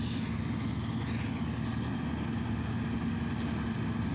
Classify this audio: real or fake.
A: real